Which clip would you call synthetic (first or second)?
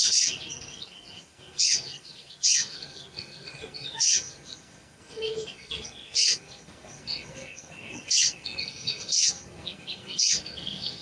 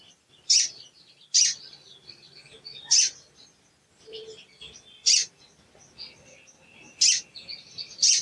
first